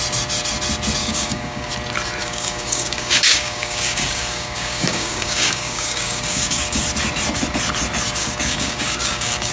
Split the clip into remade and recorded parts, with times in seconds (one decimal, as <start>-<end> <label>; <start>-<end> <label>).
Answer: 0.0-1.0 recorded; 1.0-1.7 remade; 1.7-2.2 recorded; 2.2-6.8 remade; 6.8-8.2 recorded; 8.2-9.5 remade

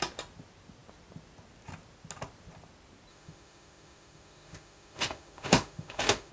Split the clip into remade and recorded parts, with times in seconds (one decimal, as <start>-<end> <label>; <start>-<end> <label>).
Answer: 0.0-3.1 recorded; 3.1-6.3 remade

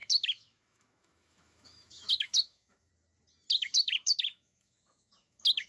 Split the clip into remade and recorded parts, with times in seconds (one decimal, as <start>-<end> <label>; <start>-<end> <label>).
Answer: 0.0-2.9 remade; 2.9-3.6 recorded; 3.6-5.7 remade

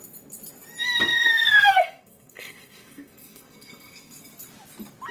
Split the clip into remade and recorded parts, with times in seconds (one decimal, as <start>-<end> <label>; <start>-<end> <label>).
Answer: 0.0-1.1 recorded; 1.1-4.2 remade; 4.2-5.1 recorded

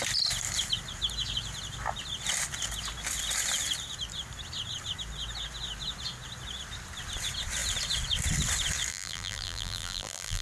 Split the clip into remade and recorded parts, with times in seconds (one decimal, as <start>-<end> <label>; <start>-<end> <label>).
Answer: 0.0-8.9 recorded; 8.9-10.4 remade

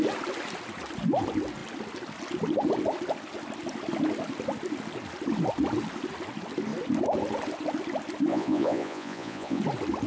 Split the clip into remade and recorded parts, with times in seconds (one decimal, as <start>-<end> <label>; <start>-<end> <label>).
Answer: 0.0-8.3 recorded; 8.3-9.6 remade; 9.6-10.1 recorded